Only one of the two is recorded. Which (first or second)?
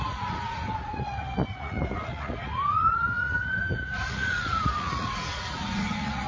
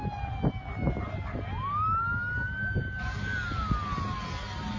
second